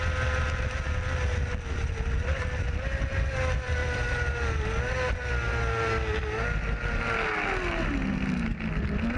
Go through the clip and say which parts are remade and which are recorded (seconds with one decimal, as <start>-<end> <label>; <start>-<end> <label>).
0.0-3.8 recorded; 3.8-4.8 remade; 4.8-9.2 recorded